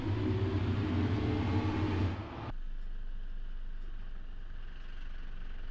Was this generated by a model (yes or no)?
no